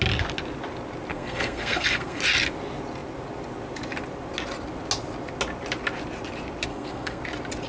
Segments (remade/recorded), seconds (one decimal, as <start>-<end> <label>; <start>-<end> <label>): 0.0-1.1 recorded; 1.1-2.2 remade; 2.2-6.7 recorded; 6.7-7.2 remade; 7.2-7.7 recorded